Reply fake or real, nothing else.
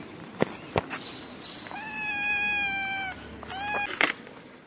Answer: real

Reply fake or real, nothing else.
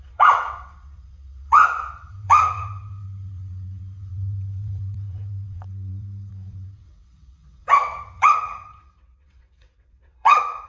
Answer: fake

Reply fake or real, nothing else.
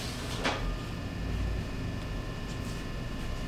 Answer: real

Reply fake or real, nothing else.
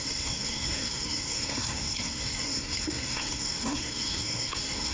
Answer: fake